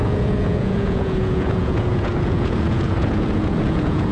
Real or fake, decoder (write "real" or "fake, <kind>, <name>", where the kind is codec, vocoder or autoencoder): fake, vocoder, Vocos